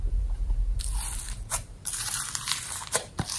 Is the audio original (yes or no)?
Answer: no